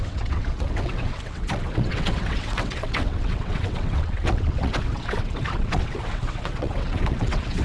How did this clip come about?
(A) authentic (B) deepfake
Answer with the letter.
B